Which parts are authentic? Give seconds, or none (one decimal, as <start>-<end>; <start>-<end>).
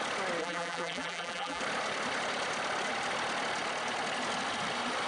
0.0-0.4; 1.6-5.1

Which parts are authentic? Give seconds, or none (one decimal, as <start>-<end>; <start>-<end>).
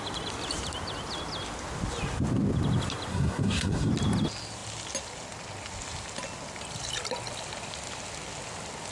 0.0-3.1; 3.9-8.9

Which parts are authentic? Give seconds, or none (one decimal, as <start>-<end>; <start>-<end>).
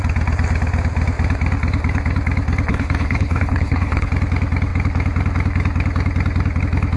0.0-2.7; 4.1-7.0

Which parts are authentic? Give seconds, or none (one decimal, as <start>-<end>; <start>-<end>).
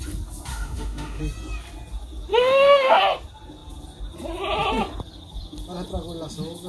0.0-0.5; 1.2-2.3; 3.0-6.7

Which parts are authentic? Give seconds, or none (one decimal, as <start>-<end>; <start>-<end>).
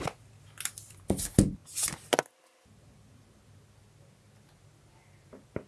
0.0-5.7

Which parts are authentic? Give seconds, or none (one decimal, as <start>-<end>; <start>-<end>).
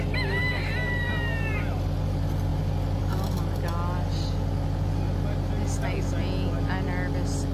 0.0-7.5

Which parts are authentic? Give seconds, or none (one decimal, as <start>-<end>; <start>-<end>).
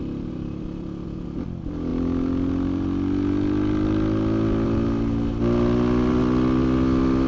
0.0-7.3